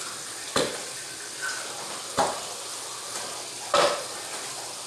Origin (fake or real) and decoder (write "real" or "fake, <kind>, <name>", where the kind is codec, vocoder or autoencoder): real